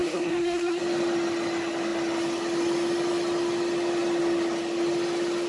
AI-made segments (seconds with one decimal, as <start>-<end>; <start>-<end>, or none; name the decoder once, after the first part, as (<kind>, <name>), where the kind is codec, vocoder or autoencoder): 0.0-0.8 (codec, SNAC)